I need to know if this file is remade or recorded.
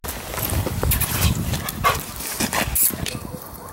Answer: recorded